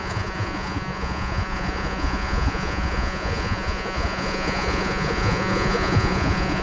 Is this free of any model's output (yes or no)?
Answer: no